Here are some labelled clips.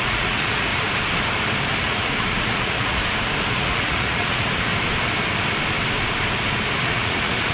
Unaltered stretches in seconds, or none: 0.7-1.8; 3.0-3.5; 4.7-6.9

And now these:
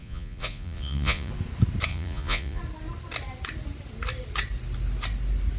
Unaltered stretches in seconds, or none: 1.3-1.9; 2.6-5.6

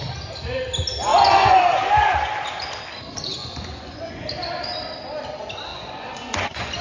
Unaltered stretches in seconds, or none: 0.0-1.1; 1.6-3.4; 4.2-5.7

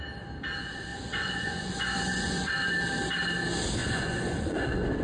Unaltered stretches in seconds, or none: 0.0-0.9; 2.5-3.8

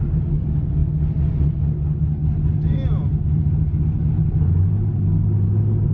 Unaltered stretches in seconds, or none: 0.0-5.9

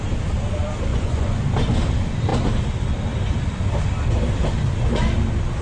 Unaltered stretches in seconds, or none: 0.0-0.9; 1.4-5.6

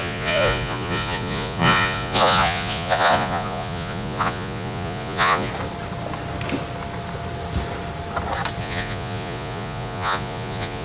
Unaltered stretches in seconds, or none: 5.5-8.6

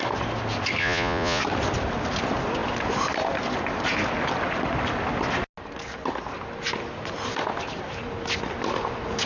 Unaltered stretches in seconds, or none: 0.0-0.8; 1.4-9.3